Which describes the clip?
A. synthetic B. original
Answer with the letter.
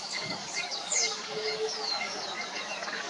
A